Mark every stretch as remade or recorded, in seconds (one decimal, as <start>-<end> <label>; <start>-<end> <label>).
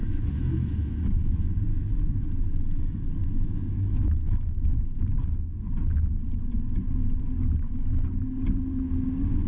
0.0-0.9 remade; 0.9-1.7 recorded; 1.7-2.8 remade; 2.8-3.2 recorded; 3.2-4.6 remade; 4.6-9.5 recorded